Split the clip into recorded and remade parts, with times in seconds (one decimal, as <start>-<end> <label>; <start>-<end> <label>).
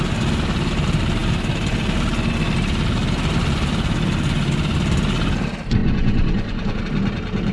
0.0-5.8 recorded; 5.8-6.8 remade; 6.8-7.5 recorded